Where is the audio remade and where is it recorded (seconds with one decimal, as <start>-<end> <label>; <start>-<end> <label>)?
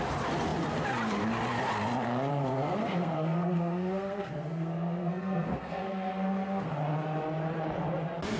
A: 0.0-2.3 recorded; 2.3-6.7 remade; 6.7-8.4 recorded